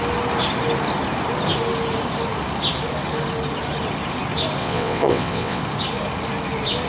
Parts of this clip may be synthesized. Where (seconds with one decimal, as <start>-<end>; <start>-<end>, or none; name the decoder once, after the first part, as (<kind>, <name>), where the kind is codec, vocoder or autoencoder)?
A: 4.6-5.6 (vocoder, WaveNeXt)